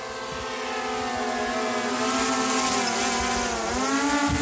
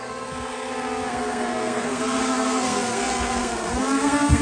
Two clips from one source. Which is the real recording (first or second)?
first